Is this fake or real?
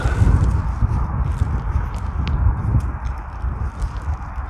real